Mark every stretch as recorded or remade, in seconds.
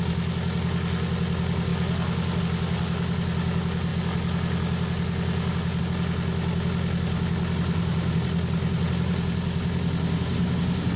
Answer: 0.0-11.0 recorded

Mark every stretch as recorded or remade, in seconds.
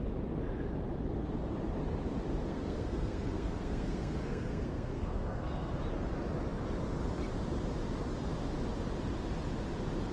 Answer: 0.0-2.5 recorded; 2.5-5.7 remade; 5.7-10.1 recorded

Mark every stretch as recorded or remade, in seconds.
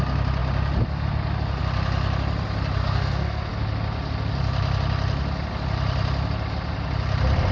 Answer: 0.0-2.8 recorded; 2.8-3.5 remade; 3.5-7.5 recorded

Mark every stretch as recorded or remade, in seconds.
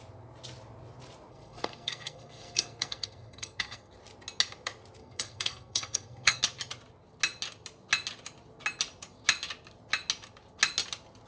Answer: 0.0-1.3 recorded; 1.3-3.9 remade; 3.9-5.0 recorded; 5.0-6.4 remade; 6.4-11.3 recorded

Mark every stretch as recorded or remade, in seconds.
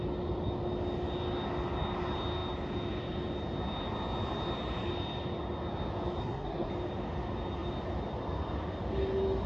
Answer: 0.0-6.2 recorded; 6.2-6.7 remade; 6.7-9.5 recorded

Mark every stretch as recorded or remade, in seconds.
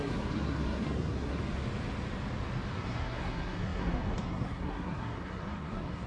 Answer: 0.0-1.4 remade; 1.4-2.7 recorded; 2.7-6.1 remade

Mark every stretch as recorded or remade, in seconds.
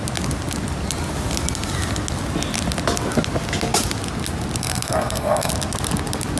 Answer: 0.0-4.6 recorded; 4.6-5.5 remade; 5.5-6.4 recorded